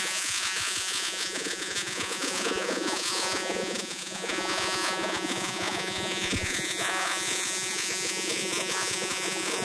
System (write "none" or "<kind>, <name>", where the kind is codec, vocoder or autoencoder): vocoder, Vocos